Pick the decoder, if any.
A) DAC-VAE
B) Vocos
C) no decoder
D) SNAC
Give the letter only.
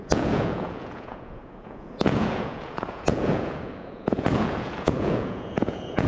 B